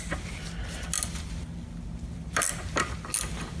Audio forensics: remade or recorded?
recorded